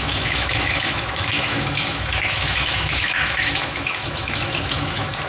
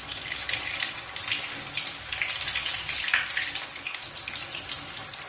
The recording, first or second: second